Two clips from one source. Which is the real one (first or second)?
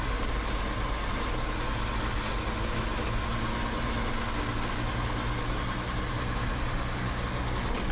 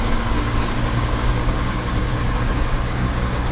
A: first